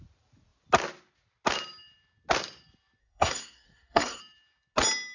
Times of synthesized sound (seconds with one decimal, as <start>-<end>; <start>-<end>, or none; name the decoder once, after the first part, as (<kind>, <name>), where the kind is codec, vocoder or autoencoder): 3.0-4.2 (codec, SNAC)